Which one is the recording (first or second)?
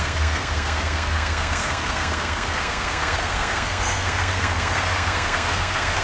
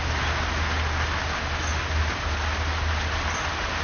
second